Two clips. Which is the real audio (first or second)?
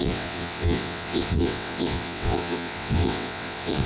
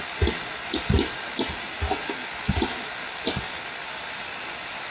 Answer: second